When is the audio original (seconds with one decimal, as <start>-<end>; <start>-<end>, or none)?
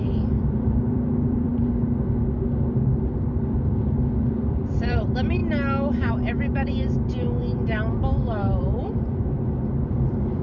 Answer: 1.6-4.3; 5.4-6.1; 7.4-8.3